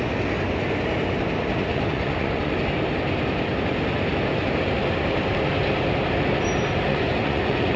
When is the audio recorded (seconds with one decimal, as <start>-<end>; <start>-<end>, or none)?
0.0-1.7; 2.5-6.9